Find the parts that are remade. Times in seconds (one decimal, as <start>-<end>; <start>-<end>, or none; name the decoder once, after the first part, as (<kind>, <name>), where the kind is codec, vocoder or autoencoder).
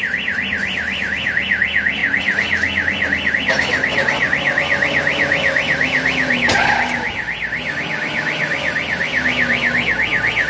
none